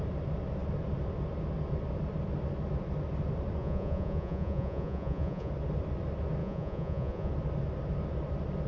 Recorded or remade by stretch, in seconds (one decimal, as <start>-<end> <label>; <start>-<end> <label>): 0.0-3.6 recorded; 3.6-5.5 remade; 5.5-6.4 recorded; 6.4-7.3 remade; 7.3-8.7 recorded